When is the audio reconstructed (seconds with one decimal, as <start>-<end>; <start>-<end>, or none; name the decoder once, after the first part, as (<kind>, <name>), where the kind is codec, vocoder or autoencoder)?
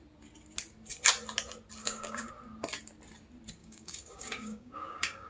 1.8-2.3 (codec, DAC); 3.6-5.3